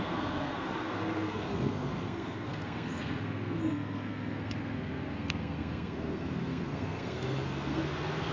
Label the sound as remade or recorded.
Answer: remade